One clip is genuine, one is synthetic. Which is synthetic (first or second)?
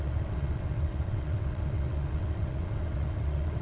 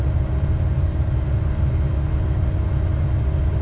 first